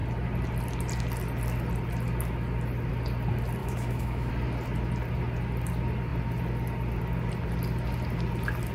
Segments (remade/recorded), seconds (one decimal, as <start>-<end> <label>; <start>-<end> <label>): 0.0-3.6 recorded; 3.6-4.3 remade; 4.3-8.7 recorded